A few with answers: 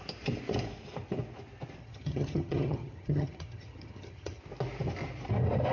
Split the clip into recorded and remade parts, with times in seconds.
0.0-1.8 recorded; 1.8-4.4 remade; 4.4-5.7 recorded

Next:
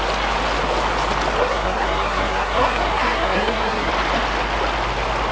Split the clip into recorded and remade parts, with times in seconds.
0.0-1.4 recorded; 1.4-3.9 remade; 3.9-5.3 recorded